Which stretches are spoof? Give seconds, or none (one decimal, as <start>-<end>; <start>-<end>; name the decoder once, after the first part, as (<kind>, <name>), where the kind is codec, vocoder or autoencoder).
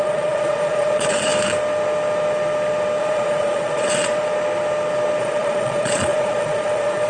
0.0-1.3 (vocoder, Vocos); 3.0-4.3; 5.2-7.1